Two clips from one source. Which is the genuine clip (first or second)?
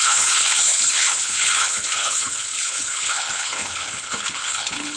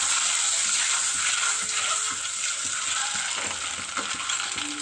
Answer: second